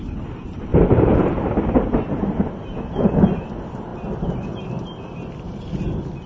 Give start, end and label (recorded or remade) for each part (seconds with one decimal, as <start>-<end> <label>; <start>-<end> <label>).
0.0-0.7 recorded; 0.7-1.4 remade; 1.4-6.3 recorded